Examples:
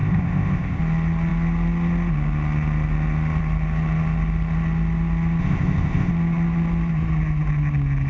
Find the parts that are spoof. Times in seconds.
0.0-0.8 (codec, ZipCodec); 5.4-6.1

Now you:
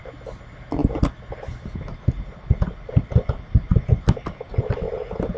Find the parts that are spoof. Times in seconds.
none

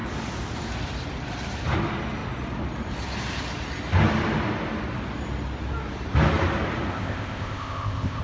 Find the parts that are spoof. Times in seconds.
6.9-8.2 (codec, ZipCodec)

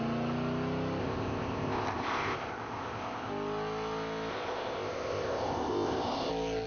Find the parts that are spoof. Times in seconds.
1.0-3.3 (codec, ZipCodec); 4.3-6.3

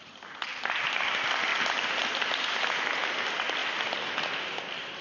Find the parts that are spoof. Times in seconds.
none

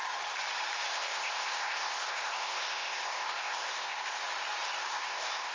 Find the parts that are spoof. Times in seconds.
0.9-4.2 (codec, ZipCodec); 4.8-5.5